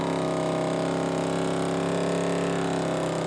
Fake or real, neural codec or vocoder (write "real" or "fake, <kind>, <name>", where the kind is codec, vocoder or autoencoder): real